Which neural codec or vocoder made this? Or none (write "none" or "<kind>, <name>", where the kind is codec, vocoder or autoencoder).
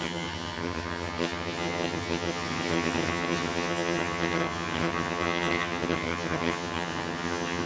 vocoder, HiFi-GAN